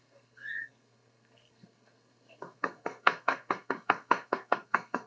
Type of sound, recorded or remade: remade